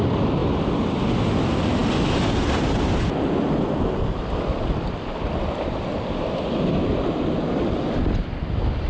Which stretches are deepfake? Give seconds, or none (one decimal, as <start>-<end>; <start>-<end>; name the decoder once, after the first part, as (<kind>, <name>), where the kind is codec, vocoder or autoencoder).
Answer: none